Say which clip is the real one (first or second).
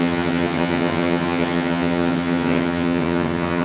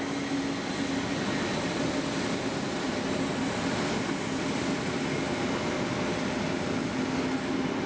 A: second